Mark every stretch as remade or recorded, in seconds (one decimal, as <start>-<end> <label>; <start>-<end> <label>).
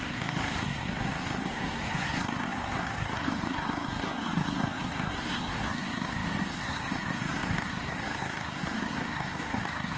0.0-10.0 remade